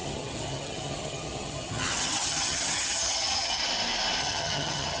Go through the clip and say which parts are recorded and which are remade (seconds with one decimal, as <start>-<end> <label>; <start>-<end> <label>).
0.0-3.6 remade; 3.6-4.2 recorded; 4.2-5.0 remade